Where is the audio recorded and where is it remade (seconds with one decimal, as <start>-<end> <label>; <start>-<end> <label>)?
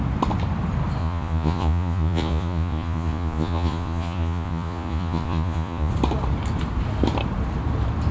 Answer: 0.0-1.0 recorded; 1.0-5.9 remade; 5.9-8.1 recorded